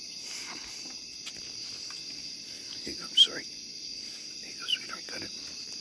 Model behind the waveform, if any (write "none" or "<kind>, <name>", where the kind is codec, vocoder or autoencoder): none